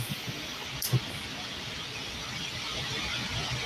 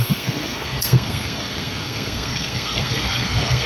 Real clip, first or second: first